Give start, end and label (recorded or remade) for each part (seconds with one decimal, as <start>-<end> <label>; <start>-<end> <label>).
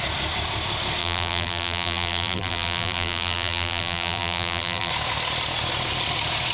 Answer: 0.0-1.0 recorded; 1.0-4.9 remade; 4.9-6.5 recorded